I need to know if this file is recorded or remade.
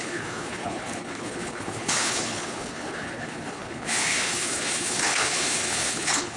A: remade